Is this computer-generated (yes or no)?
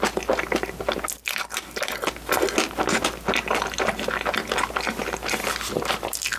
no